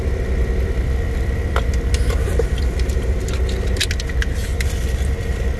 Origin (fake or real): real